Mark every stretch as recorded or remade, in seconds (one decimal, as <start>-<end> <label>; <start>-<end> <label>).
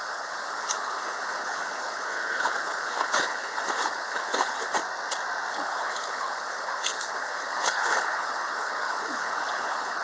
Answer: 0.0-4.8 remade; 4.8-5.5 recorded; 5.5-10.0 remade